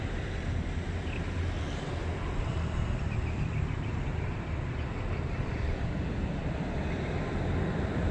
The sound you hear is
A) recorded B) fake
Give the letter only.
B